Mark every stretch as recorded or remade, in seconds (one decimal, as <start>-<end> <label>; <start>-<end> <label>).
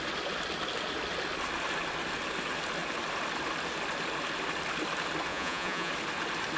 0.0-5.3 recorded; 5.3-5.9 remade; 5.9-6.6 recorded